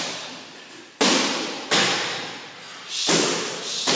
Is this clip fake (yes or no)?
no